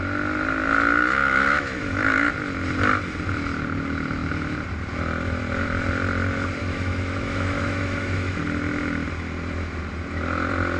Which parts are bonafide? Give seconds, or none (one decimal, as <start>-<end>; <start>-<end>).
0.0-1.2; 2.3-6.6; 8.4-10.8